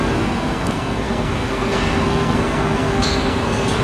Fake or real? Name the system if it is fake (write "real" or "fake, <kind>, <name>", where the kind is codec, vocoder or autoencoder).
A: fake, codec, SNAC